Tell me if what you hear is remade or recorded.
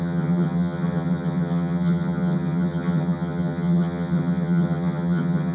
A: remade